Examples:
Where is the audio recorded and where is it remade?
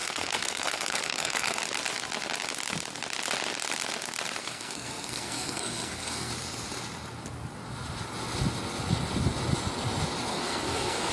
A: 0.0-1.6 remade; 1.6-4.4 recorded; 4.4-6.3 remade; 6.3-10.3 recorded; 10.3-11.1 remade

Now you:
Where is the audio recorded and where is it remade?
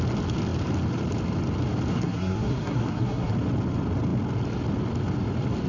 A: 0.0-1.9 recorded; 1.9-3.3 remade; 3.3-5.7 recorded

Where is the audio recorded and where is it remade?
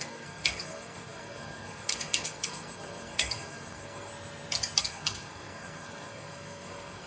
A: 0.0-4.1 remade; 4.1-4.8 recorded; 4.8-7.1 remade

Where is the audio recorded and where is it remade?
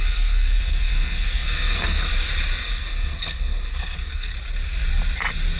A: 0.0-2.1 remade; 2.1-2.6 recorded; 2.6-4.3 remade; 4.3-5.6 recorded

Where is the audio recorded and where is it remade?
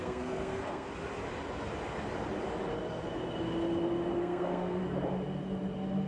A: 0.0-0.9 remade; 0.9-4.2 recorded; 4.2-4.8 remade; 4.8-6.1 recorded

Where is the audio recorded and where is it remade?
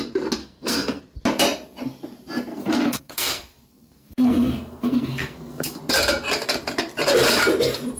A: 0.0-0.4 recorded; 0.4-1.0 remade; 1.0-2.5 recorded; 2.5-5.8 remade; 5.8-8.0 recorded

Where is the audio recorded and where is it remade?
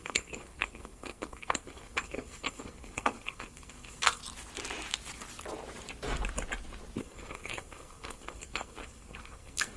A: 0.0-4.2 remade; 4.2-7.0 recorded; 7.0-9.8 remade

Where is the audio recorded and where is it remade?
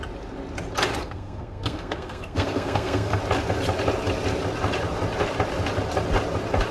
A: 0.0-1.0 recorded; 1.0-3.2 remade; 3.2-6.7 recorded